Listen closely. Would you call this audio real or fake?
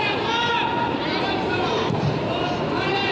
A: real